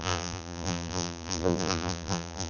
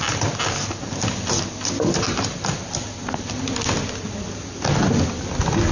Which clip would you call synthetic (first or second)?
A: first